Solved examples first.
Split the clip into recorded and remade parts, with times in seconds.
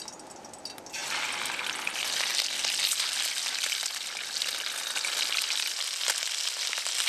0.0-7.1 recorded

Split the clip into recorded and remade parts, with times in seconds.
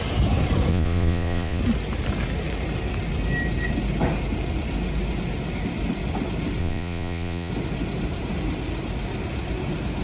0.0-0.7 recorded; 0.7-1.6 remade; 1.6-6.6 recorded; 6.6-7.5 remade; 7.5-10.0 recorded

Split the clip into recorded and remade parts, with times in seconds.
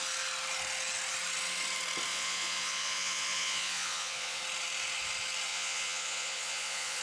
0.0-2.1 recorded; 2.1-4.4 remade; 4.4-5.5 recorded; 5.5-7.0 remade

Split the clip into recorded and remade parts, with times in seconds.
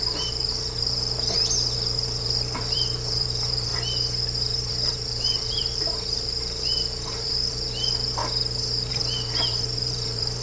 0.0-3.7 remade; 3.7-4.7 recorded; 4.7-8.2 remade; 8.2-8.9 recorded; 8.9-10.4 remade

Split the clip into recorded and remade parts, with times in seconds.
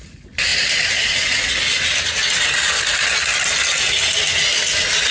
0.0-5.1 recorded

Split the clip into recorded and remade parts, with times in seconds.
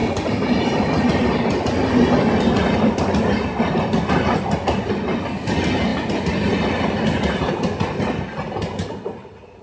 0.0-9.6 recorded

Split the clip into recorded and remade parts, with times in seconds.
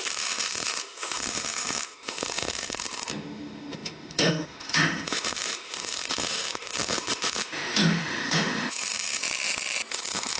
0.0-9.2 remade; 9.2-9.9 recorded; 9.9-10.4 remade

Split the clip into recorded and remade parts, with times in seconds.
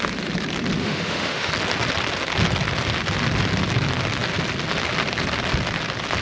0.0-0.8 recorded; 0.8-1.5 remade; 1.5-6.2 recorded